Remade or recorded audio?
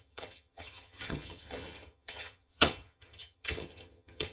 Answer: remade